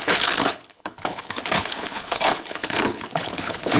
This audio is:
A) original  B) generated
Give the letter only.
B